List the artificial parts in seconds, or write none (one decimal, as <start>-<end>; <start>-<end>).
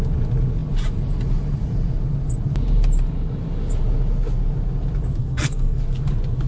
5.2-5.8